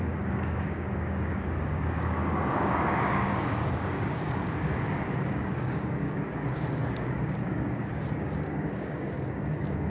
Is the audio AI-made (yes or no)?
yes